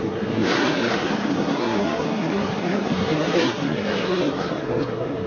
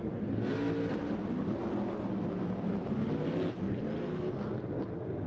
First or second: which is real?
second